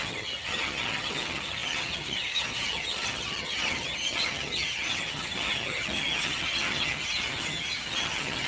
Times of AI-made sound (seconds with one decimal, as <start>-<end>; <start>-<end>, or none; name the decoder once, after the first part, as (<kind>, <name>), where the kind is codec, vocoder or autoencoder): 0.0-8.5 (vocoder, HiFi-GAN)